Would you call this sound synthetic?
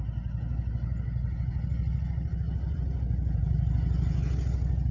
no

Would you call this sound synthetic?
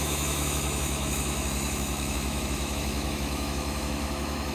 yes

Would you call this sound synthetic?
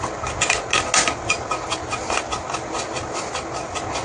no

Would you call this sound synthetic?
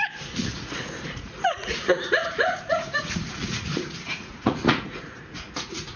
yes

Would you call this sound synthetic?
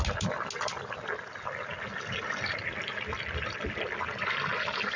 no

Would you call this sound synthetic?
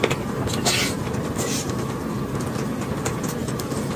no